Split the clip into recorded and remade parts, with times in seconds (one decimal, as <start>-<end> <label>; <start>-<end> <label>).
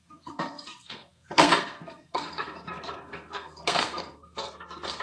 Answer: 0.0-5.0 remade